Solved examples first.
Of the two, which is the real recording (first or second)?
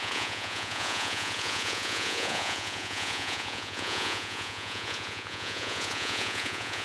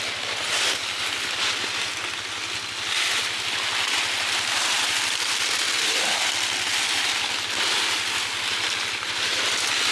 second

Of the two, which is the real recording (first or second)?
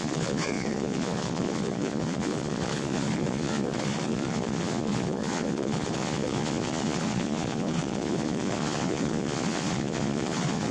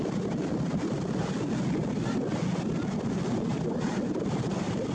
second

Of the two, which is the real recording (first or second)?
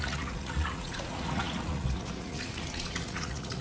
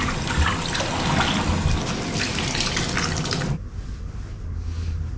second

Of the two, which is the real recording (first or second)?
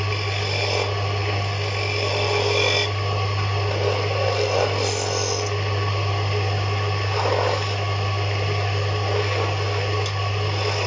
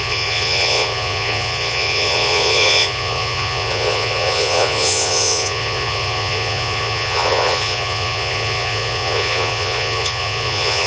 first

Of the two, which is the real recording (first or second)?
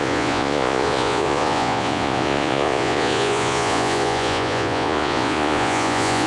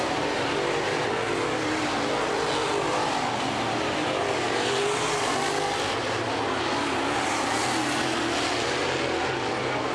second